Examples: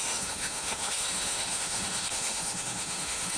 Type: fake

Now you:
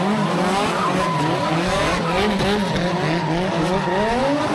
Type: real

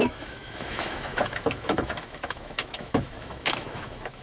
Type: fake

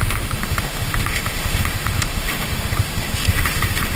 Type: fake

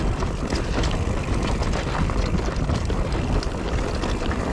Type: real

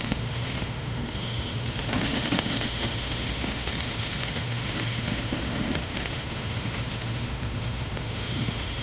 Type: fake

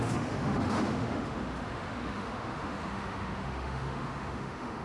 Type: fake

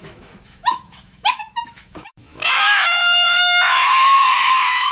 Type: fake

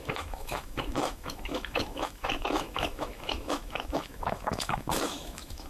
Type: fake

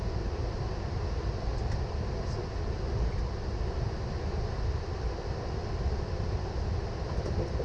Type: real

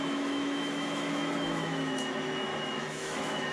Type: fake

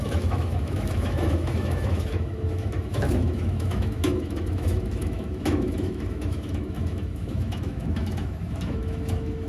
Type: fake